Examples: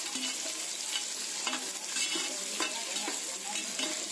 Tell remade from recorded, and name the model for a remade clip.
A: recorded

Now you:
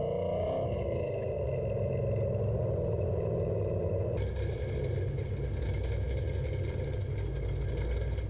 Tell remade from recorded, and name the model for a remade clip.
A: recorded